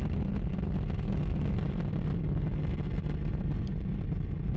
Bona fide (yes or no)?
yes